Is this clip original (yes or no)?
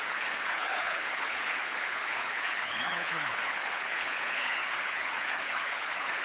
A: no